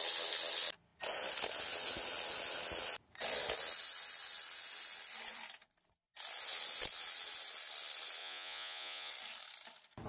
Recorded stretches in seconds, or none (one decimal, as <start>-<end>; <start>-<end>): 0.0-8.2; 9.1-10.1